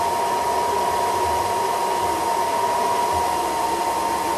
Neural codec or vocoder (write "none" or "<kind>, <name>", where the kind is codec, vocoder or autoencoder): none